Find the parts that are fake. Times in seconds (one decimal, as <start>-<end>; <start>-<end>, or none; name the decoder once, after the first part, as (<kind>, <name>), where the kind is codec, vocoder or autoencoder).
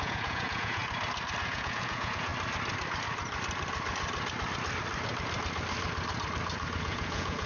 0.0-0.8 (vocoder, Vocos); 1.4-2.3; 6.8-7.5